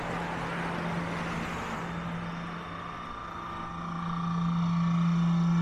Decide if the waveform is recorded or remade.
recorded